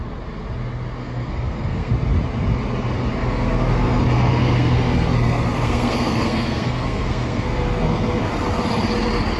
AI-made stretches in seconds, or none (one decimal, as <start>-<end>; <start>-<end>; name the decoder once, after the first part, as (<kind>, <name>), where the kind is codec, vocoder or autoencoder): 1.0-1.9 (codec, SNAC); 3.2-8.3